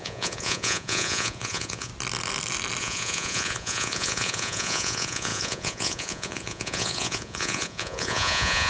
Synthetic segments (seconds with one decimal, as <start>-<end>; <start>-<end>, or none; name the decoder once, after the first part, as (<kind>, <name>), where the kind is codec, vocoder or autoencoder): 0.0-1.9 (vocoder, Vocos); 2.8-8.7